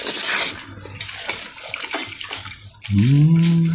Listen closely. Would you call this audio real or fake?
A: real